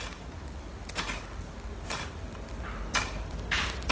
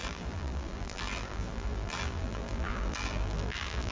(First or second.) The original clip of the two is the first